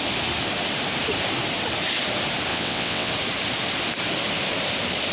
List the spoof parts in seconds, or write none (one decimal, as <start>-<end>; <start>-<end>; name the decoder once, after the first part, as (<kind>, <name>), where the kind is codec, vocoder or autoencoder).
2.5-3.1 (vocoder, WaveNeXt)